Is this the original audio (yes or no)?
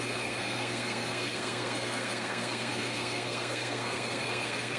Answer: no